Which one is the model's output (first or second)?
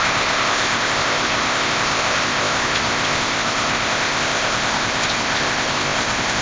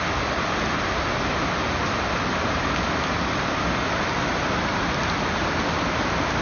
first